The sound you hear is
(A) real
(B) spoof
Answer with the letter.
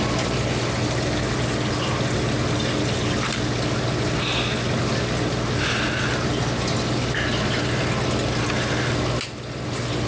A